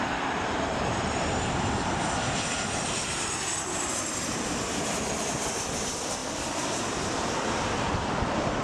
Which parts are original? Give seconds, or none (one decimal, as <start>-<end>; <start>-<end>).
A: none